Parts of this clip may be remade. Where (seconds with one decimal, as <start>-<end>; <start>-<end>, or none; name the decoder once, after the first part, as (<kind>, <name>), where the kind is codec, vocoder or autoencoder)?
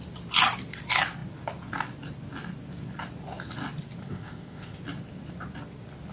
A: 4.0-4.8 (codec, ZipCodec)